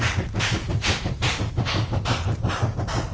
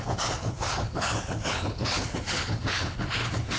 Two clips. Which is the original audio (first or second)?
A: first